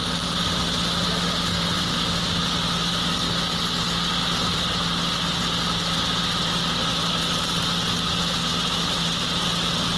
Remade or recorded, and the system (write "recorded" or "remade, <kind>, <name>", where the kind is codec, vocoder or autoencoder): recorded